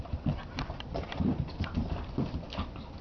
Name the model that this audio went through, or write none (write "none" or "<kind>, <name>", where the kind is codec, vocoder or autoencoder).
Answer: none